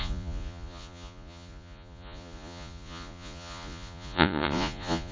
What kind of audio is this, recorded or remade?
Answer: remade